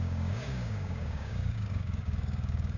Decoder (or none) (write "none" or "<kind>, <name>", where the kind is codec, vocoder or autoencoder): codec, DAC